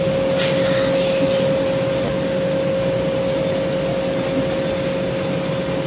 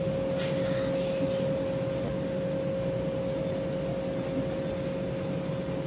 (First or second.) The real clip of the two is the second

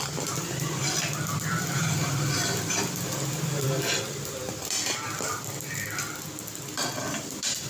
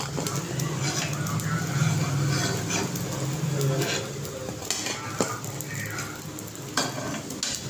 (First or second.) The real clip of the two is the second